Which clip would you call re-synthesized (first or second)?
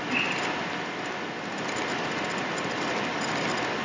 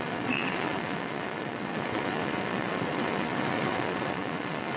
second